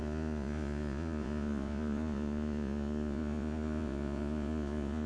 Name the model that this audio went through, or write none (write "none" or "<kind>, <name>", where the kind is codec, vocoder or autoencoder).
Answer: vocoder, Vocos